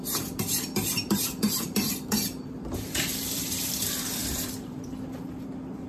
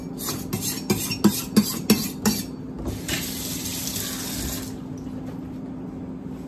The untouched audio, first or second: second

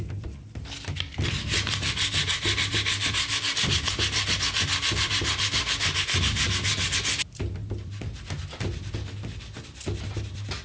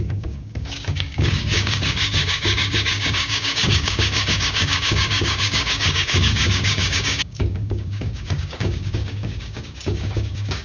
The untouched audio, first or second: first